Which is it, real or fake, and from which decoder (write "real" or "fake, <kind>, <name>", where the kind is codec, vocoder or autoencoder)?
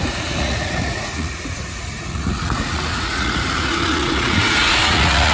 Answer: fake, vocoder, Vocos